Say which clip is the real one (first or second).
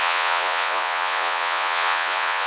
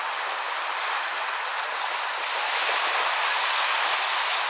second